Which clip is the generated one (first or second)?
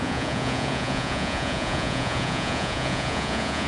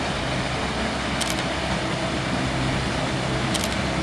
first